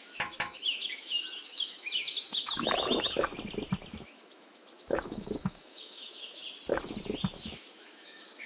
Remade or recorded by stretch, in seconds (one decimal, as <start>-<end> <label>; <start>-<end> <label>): 0.0-3.3 remade; 3.3-3.9 recorded; 3.9-6.4 remade; 6.4-7.4 recorded; 7.4-8.5 remade